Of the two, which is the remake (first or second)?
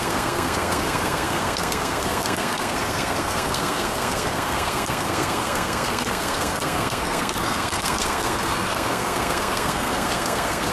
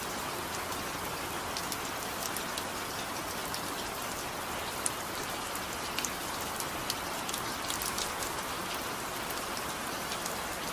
first